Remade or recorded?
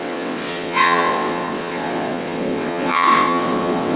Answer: remade